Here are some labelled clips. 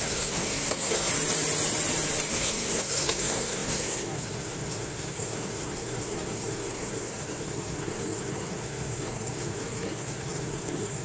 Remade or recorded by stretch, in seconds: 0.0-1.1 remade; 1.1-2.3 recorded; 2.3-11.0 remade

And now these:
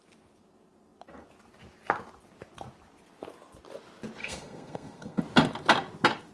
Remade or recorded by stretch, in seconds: 0.0-4.2 recorded; 4.2-5.2 remade; 5.2-6.3 recorded